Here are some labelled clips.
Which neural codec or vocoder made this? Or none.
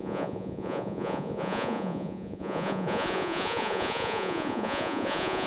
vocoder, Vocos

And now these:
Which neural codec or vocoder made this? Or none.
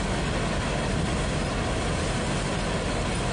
none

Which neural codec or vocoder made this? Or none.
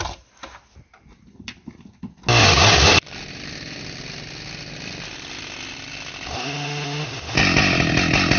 none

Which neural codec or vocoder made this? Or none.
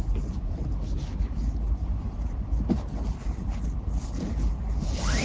none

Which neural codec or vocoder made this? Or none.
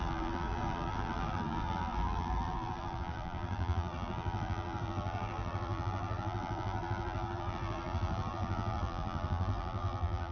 vocoder, BigVGAN v2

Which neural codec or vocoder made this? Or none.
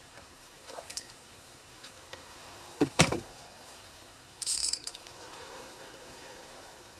codec, SNAC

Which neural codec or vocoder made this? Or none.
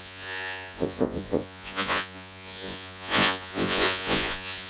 vocoder, Vocos